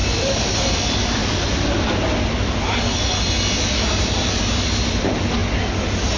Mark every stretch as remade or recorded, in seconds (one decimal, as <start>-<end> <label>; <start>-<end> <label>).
0.0-1.2 remade; 1.2-4.7 recorded; 4.7-5.4 remade; 5.4-6.2 recorded